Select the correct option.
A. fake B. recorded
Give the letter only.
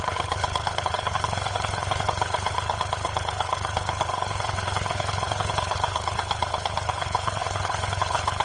A